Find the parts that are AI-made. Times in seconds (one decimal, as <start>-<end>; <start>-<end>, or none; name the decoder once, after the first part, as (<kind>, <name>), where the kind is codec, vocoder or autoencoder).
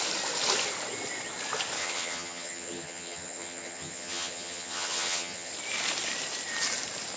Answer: 1.8-5.5 (vocoder, HiFi-GAN)